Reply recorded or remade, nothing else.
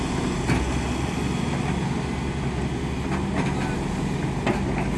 recorded